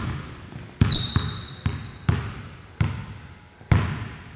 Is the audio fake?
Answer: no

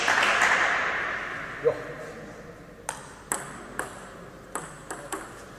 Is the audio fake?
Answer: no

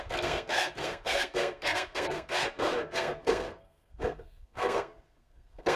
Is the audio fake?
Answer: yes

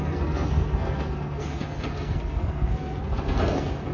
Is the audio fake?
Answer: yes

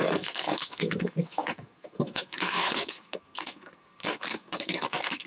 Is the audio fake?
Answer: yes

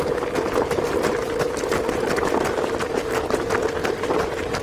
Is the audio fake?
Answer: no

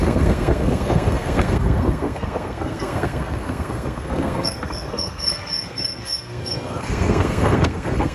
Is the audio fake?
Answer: yes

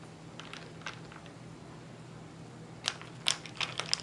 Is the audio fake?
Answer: no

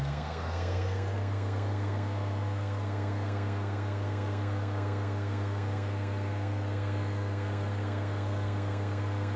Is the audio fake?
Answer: yes